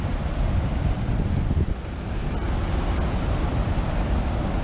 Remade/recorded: recorded